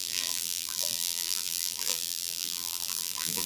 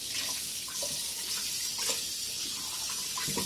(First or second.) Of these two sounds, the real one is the second